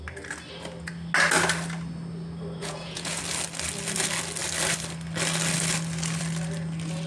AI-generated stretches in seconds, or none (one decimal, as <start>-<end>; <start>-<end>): 2.6-3.2